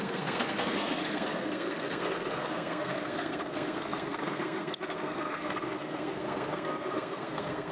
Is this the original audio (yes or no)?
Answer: no